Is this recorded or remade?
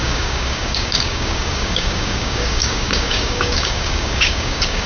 remade